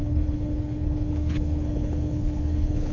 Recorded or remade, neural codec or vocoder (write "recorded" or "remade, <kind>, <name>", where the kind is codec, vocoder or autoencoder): remade, codec, HILCodec